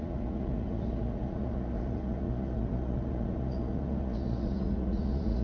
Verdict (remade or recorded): remade